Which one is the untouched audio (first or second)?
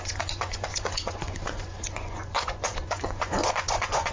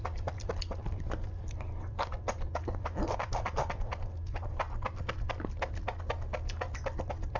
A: second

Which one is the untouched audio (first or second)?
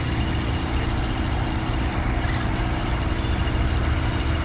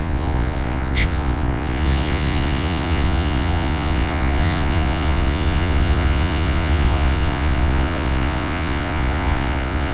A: first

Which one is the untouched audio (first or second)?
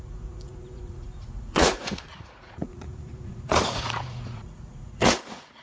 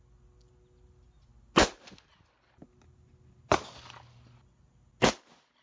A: second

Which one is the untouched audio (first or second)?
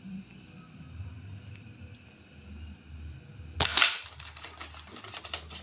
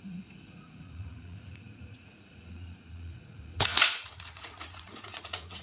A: first